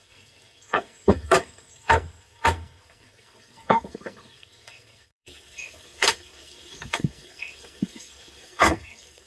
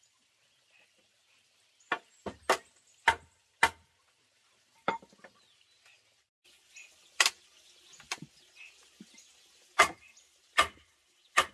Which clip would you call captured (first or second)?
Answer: second